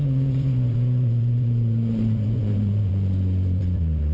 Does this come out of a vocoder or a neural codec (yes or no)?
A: yes